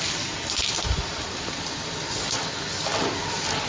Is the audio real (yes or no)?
yes